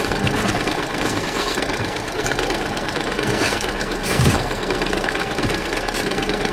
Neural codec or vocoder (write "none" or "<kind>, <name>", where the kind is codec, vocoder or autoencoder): codec, SNAC